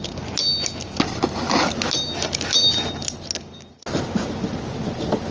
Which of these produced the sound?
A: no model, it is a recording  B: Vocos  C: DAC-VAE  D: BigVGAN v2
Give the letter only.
A